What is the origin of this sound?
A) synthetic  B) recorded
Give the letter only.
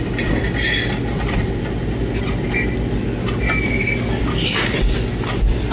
B